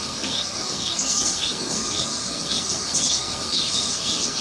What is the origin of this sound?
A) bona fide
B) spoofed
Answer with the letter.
B